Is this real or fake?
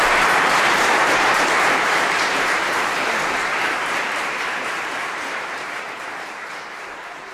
fake